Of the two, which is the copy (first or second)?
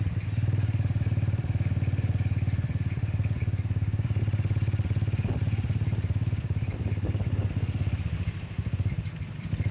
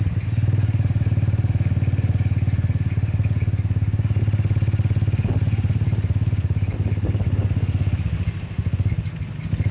first